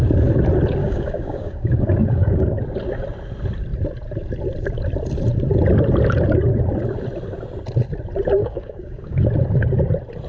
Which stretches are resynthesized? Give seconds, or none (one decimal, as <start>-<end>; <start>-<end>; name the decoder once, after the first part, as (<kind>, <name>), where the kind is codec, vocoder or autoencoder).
0.8-2.6 (codec, DAC); 8.4-9.2